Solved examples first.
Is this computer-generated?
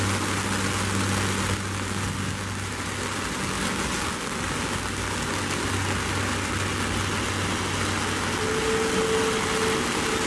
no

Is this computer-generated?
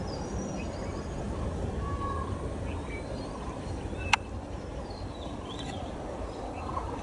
no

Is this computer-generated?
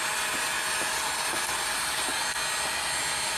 no